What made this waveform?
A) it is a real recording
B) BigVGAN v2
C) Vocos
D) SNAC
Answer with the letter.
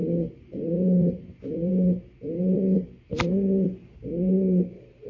B